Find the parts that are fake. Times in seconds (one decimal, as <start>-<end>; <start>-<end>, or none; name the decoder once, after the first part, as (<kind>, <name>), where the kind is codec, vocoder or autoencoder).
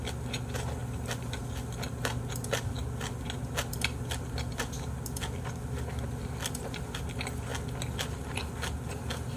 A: none